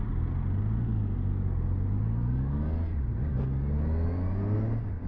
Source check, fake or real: real